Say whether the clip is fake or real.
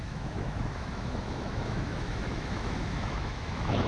fake